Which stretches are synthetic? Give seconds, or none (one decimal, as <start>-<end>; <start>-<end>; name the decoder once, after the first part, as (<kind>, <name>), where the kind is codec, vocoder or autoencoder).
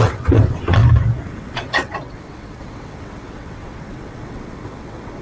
0.0-0.8 (vocoder, WaveNeXt); 1.3-5.2